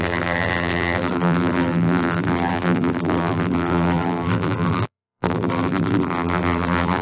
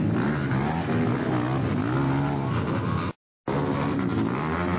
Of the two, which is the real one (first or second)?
second